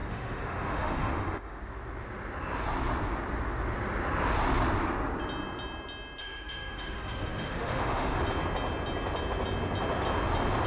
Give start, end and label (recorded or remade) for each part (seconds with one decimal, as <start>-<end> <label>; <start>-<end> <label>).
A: 0.0-1.6 remade; 1.6-6.2 recorded; 6.2-8.2 remade; 8.2-10.7 recorded